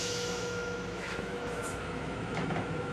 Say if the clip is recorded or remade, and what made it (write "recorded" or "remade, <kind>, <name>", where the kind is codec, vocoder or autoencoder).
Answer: remade, autoencoder, DAC-VAE